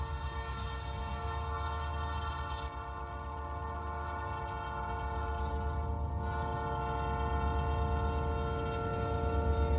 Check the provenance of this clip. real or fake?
real